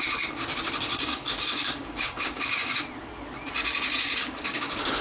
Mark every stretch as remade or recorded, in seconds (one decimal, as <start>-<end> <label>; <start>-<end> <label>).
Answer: 0.0-0.9 recorded; 0.9-2.8 remade; 2.8-4.2 recorded; 4.2-5.0 remade